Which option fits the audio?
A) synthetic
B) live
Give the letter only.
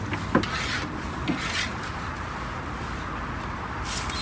B